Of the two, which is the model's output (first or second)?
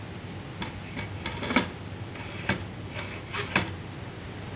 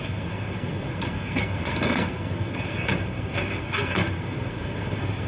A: second